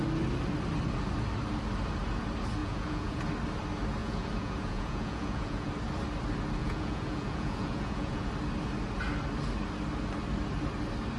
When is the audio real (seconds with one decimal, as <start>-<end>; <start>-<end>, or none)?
0.0-2.6; 3.2-4.0; 5.7-6.6; 8.3-11.2